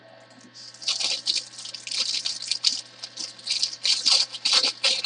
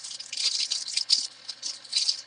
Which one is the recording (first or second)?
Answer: first